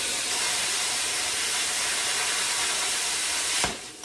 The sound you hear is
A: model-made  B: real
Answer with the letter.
B